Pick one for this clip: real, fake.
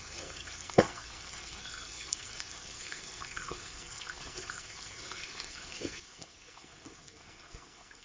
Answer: fake